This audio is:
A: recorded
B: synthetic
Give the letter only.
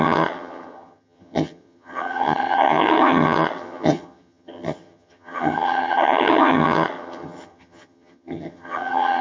B